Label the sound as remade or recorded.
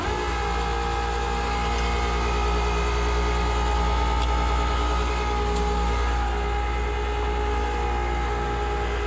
recorded